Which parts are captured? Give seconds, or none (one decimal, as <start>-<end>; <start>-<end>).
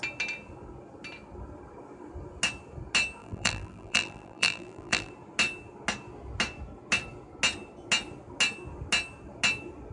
0.0-3.2; 5.1-9.9